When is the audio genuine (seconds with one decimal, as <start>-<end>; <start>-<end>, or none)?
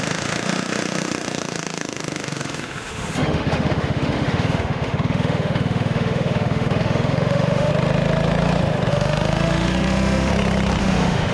7.7-8.9; 10.3-10.8